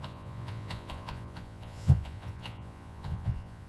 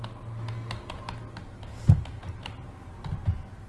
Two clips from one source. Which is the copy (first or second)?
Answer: first